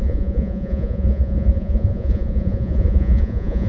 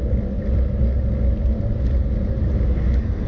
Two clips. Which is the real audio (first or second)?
second